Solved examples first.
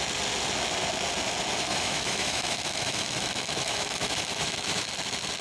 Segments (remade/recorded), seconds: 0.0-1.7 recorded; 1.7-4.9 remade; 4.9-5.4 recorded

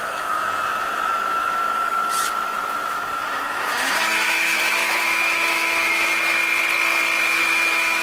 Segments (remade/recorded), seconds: 0.0-6.4 remade; 6.4-7.2 recorded; 7.2-8.0 remade

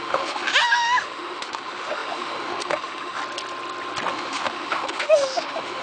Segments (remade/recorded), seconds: 0.0-3.2 remade; 3.2-4.1 recorded; 4.1-5.8 remade

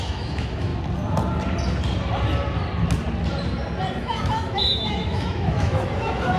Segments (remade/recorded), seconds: 0.0-0.7 remade; 0.7-4.0 recorded; 4.0-6.4 remade

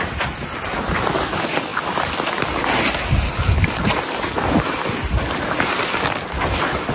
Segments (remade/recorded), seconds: 0.0-6.9 recorded